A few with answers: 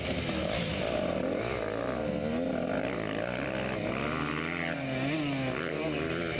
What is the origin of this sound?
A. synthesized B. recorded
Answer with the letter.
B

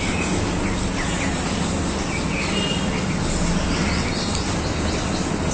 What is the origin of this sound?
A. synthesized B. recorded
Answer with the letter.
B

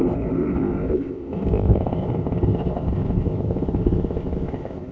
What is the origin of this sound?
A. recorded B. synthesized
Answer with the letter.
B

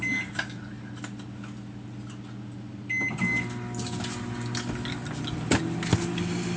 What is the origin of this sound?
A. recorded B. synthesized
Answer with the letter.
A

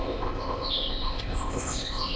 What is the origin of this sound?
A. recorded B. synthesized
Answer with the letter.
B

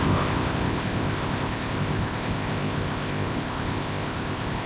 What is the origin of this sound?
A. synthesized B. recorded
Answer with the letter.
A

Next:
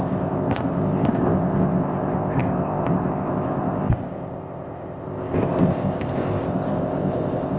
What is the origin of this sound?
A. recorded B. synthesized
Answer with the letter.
B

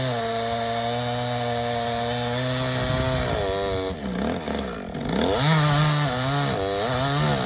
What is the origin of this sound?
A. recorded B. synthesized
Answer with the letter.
A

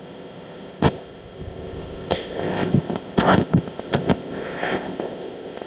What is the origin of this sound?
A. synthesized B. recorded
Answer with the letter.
A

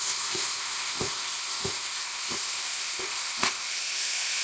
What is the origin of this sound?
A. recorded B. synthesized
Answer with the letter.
B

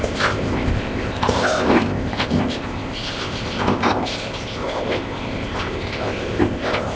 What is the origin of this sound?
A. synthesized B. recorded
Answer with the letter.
A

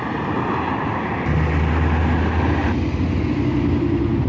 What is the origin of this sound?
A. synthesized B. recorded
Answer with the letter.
B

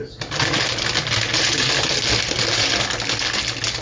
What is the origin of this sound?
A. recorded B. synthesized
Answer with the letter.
A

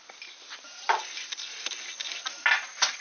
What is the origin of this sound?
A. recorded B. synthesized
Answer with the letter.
A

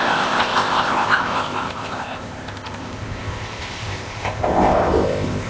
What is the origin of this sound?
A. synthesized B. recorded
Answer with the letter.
A